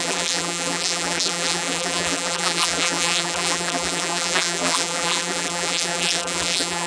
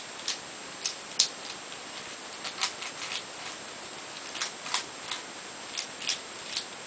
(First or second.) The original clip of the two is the second